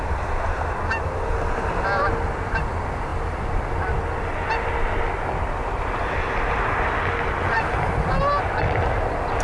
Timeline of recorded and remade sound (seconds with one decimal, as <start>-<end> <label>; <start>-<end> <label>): 0.0-9.4 recorded